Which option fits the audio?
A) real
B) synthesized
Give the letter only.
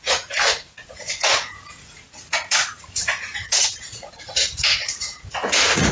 B